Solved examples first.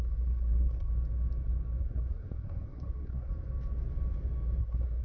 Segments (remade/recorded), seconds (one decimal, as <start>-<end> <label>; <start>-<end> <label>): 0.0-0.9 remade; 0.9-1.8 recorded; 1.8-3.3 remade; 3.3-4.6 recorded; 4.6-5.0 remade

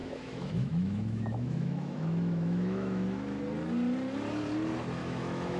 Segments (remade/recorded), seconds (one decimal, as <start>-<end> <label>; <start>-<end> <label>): 0.0-3.4 remade; 3.4-5.0 recorded; 5.0-5.6 remade

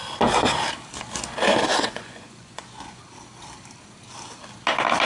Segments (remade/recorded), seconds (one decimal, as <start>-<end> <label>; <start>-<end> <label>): 0.0-1.7 recorded; 1.7-3.0 remade; 3.0-5.1 recorded

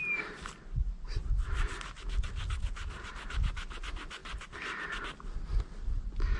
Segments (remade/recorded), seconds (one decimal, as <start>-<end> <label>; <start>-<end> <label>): 0.0-6.4 recorded